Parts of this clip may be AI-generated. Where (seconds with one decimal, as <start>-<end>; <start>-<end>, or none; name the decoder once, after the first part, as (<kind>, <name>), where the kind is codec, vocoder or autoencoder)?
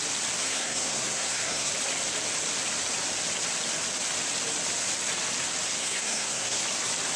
0.4-1.7 (codec, SNAC); 5.8-6.6